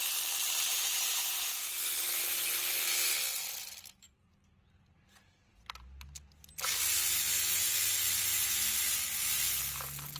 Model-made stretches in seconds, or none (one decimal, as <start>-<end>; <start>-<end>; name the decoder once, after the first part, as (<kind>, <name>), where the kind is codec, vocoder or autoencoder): 0.7-1.7 (vocoder, Vocos)